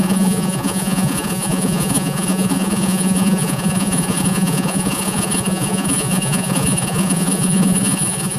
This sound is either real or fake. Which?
fake